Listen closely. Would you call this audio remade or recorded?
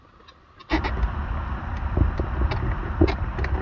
recorded